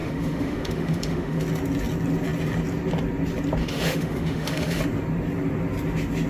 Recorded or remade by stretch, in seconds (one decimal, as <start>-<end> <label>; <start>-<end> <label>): 0.0-1.4 remade; 1.4-3.6 recorded; 3.6-4.8 remade; 4.8-6.3 recorded